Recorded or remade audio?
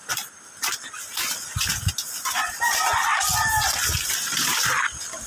recorded